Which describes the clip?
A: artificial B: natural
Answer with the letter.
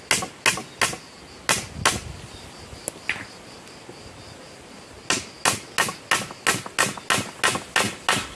B